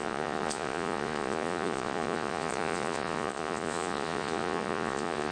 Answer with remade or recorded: remade